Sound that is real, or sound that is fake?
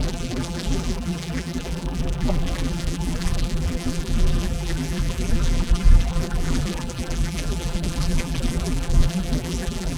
fake